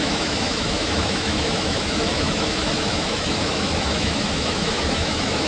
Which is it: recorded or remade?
remade